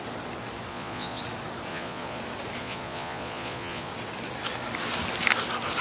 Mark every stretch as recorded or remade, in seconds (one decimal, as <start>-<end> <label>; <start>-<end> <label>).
0.0-0.7 recorded; 0.7-1.2 remade; 1.2-1.7 recorded; 1.7-2.2 remade; 2.2-2.6 recorded; 2.6-3.9 remade; 3.9-5.8 recorded